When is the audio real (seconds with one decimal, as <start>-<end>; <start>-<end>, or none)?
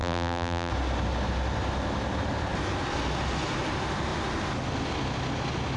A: 0.7-5.8